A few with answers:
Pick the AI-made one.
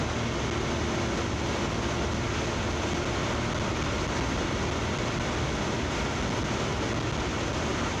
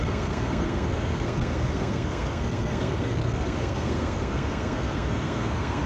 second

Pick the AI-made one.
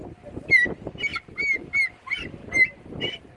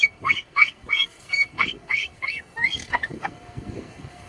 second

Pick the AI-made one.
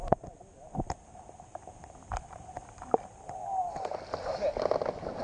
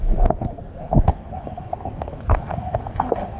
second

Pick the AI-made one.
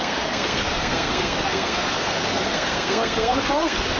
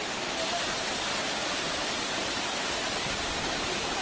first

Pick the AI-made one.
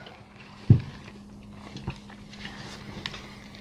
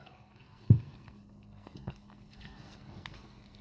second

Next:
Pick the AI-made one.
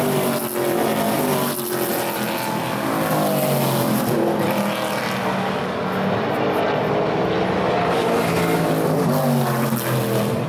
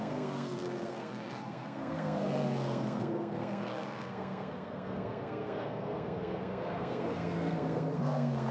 second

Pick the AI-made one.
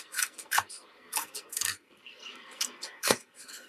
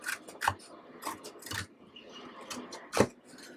first